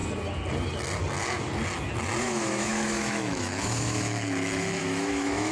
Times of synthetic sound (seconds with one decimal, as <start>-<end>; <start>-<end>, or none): 2.2-5.5